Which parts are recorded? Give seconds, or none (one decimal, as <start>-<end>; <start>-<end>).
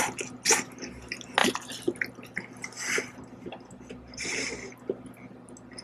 0.0-5.8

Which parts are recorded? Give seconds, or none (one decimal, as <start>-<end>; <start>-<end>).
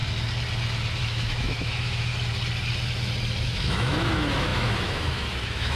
0.0-1.0; 2.1-3.4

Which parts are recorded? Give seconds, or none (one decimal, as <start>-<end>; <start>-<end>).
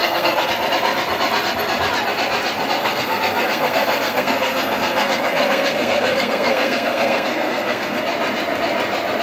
0.5-2.8; 8.0-9.2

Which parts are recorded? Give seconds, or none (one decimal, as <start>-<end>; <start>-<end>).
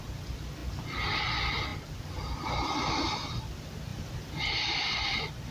0.0-5.5